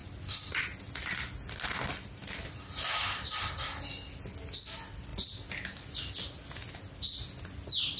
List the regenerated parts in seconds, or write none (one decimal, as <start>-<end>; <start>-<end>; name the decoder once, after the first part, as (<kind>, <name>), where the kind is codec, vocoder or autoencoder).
none